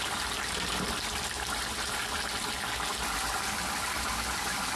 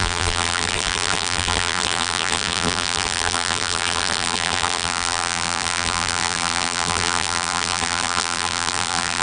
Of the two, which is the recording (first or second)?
first